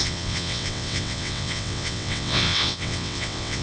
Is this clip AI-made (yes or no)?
yes